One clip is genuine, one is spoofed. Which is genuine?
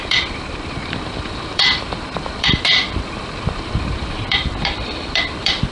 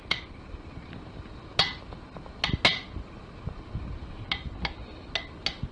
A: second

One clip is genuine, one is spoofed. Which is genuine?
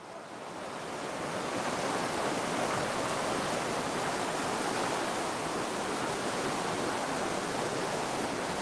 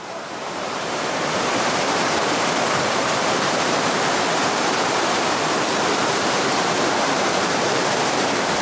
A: first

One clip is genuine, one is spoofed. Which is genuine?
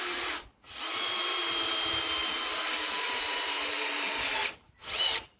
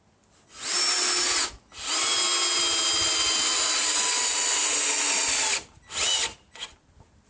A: second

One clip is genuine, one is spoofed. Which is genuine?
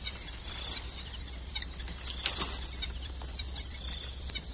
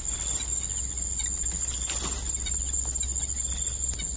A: second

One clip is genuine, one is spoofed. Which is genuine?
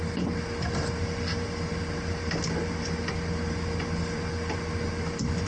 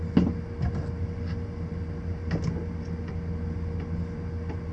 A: second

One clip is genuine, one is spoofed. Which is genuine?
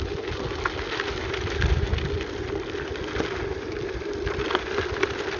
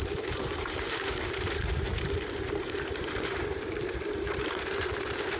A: first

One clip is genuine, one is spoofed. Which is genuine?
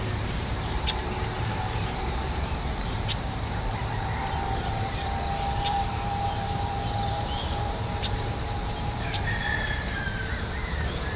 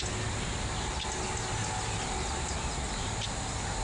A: second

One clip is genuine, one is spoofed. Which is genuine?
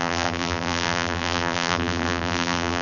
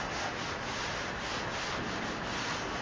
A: second